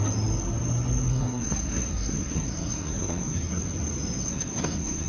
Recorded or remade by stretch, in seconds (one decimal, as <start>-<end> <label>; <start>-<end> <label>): 0.0-1.1 recorded; 1.1-3.6 remade; 3.6-4.2 recorded; 4.2-5.1 remade